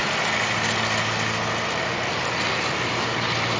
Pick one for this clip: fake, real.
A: real